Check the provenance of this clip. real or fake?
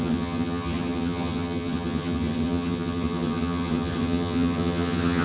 fake